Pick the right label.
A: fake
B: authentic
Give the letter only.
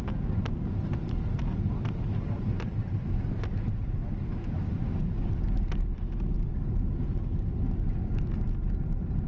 B